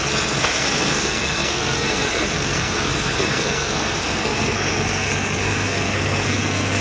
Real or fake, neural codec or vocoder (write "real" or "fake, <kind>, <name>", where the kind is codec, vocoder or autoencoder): fake, codec, SNAC